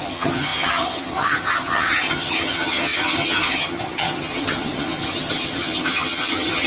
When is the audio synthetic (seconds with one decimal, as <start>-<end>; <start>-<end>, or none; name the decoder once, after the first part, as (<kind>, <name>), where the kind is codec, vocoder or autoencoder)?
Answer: 0.0-6.7 (vocoder, HiFi-GAN)